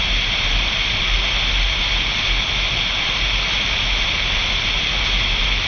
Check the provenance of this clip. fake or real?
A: real